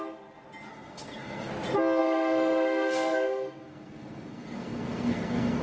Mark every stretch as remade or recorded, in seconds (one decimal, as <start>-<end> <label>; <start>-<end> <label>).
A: 0.0-0.7 recorded; 0.7-1.5 remade; 1.5-2.0 recorded; 2.0-5.6 remade